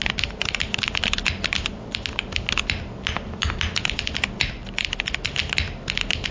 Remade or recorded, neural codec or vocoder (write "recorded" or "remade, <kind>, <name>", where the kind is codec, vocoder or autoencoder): recorded